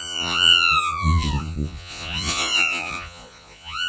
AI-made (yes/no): yes